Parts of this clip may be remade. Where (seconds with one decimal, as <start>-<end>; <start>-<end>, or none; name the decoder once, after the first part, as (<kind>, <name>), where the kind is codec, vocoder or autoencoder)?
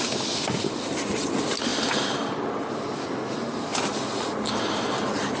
none